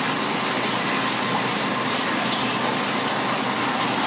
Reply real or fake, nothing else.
real